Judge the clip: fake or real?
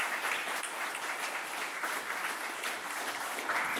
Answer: real